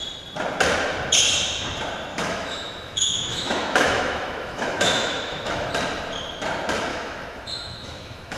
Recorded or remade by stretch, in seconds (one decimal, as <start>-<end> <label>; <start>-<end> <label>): 0.0-2.1 recorded; 2.1-5.7 remade; 5.7-6.9 recorded; 6.9-8.4 remade